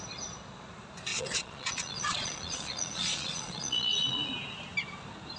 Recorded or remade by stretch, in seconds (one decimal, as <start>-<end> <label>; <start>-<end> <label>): 0.0-1.1 recorded; 1.1-4.3 remade; 4.3-5.4 recorded